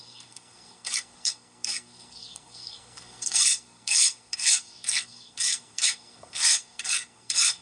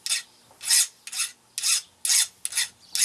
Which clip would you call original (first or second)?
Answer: second